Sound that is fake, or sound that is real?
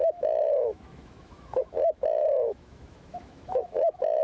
fake